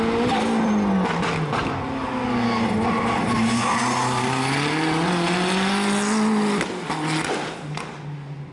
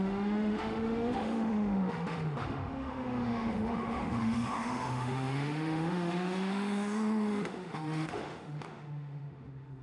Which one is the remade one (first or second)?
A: second